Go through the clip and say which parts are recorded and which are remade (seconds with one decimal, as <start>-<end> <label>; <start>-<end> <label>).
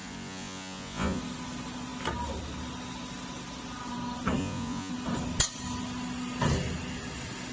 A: 0.0-1.2 remade; 1.2-4.4 recorded; 4.4-4.9 remade; 4.9-7.5 recorded